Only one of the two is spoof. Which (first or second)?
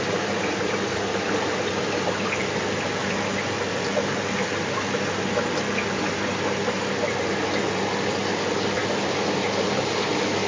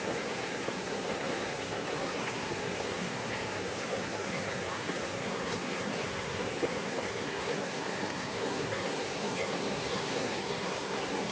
second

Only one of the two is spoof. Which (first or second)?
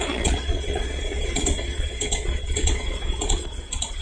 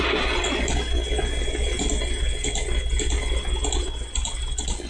first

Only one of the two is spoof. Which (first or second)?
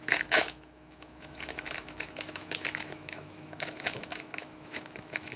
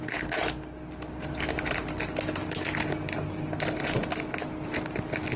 first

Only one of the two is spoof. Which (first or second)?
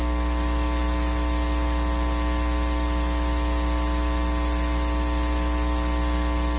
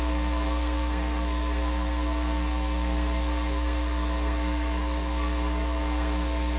second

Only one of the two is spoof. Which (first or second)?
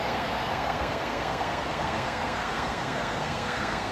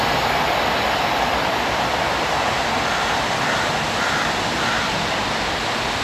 first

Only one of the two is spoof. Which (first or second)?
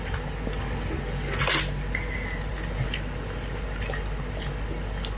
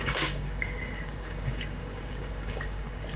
second